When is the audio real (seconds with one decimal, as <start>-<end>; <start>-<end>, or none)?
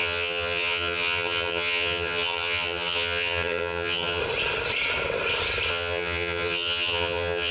4.2-5.7